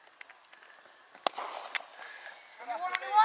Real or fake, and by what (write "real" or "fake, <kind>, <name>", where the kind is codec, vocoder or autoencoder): real